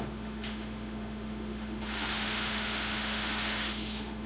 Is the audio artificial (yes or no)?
yes